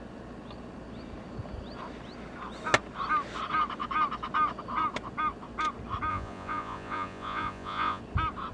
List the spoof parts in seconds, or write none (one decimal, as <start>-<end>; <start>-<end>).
6.1-8.0